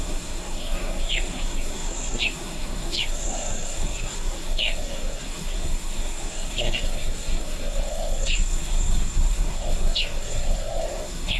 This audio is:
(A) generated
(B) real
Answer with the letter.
A